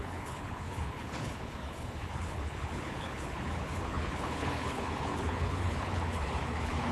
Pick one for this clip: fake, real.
fake